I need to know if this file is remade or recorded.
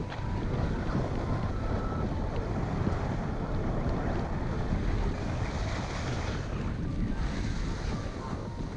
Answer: recorded